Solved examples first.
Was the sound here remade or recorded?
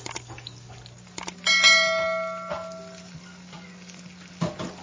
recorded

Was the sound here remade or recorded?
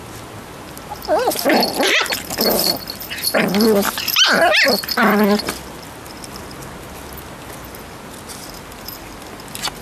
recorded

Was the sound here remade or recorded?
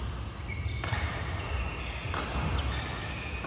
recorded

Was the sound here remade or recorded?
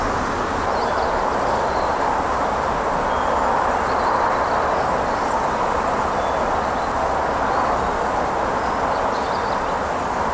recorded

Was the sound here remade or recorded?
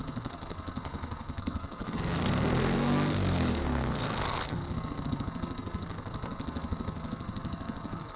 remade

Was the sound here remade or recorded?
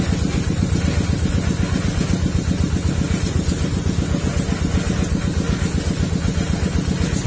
recorded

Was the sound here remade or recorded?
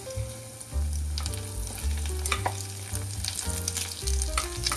recorded